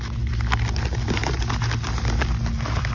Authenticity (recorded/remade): recorded